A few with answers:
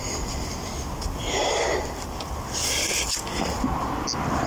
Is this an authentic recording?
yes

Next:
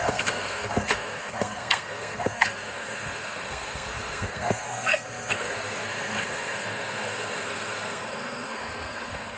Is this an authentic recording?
no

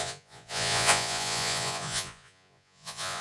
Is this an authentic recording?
no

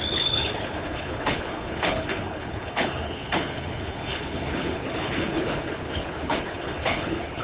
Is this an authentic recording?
no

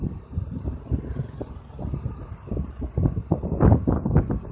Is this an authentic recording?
yes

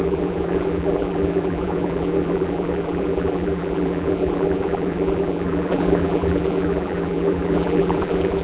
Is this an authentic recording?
no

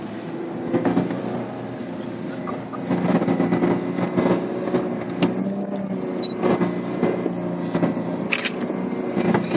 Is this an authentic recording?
yes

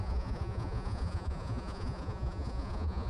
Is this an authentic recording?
no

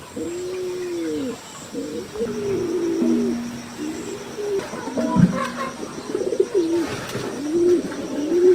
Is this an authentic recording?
yes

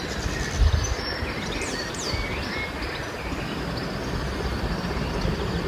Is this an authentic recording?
yes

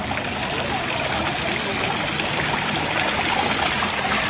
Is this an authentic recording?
yes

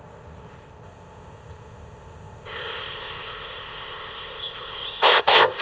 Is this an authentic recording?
no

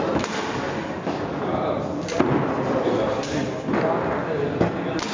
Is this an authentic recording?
yes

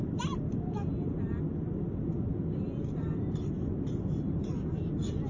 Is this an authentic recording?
yes